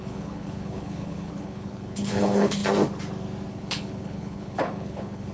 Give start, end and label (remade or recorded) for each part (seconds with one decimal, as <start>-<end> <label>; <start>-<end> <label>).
0.0-2.6 remade; 2.6-3.5 recorded; 3.5-5.3 remade